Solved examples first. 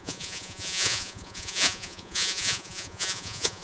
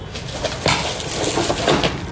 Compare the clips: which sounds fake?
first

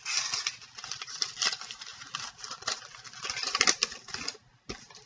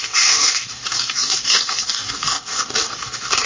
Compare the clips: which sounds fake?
second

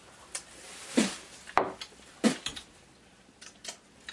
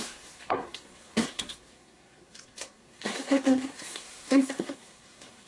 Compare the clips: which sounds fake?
second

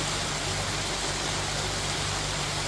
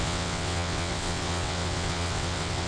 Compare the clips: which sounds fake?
second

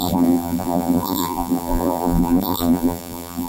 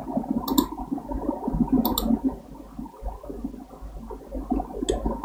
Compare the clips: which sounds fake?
first